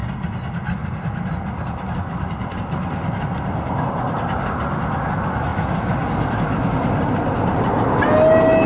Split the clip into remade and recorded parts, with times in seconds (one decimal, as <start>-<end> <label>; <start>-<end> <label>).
0.0-8.7 recorded